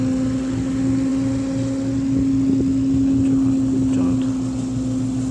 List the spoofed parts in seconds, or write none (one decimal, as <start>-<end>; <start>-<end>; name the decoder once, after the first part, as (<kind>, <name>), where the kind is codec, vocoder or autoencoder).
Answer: none